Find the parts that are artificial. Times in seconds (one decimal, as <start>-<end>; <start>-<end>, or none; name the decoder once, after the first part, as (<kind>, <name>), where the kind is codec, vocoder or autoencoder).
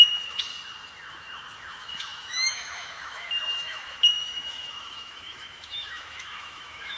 0.0-0.5 (autoencoder, DAC-VAE); 1.1-7.0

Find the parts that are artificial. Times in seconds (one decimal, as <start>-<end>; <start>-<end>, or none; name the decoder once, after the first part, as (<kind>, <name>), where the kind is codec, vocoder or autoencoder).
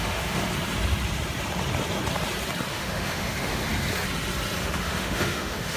0.0-0.4 (autoencoder, DAC-VAE); 2.7-3.6; 4.6-5.8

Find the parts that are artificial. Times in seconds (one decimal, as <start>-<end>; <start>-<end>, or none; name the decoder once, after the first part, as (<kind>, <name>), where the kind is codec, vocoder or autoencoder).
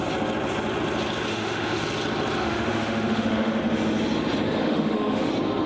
1.3-1.8 (autoencoder, DAC-VAE); 2.4-3.6; 4.6-5.3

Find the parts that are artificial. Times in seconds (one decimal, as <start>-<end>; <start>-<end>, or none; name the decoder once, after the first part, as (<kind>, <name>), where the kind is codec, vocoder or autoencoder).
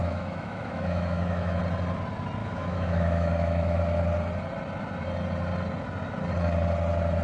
0.0-1.6 (autoencoder, DAC-VAE); 2.4-3.8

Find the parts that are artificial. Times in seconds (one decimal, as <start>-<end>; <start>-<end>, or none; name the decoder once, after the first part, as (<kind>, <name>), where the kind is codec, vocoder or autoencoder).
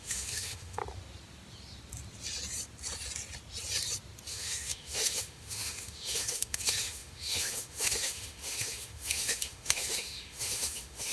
0.0-0.8 (autoencoder, DAC-VAE); 4.3-11.1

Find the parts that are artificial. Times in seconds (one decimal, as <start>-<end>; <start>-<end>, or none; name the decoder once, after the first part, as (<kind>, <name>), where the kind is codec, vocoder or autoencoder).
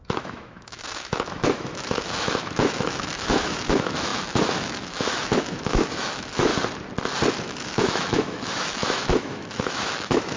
0.0-6.5 (autoencoder, DAC-VAE); 7.3-10.4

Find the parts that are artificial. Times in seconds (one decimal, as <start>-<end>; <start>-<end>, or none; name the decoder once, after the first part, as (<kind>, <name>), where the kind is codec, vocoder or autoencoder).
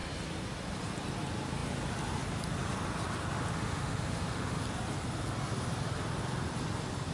3.5-4.6 (autoencoder, DAC-VAE)